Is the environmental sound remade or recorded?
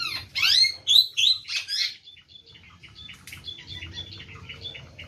recorded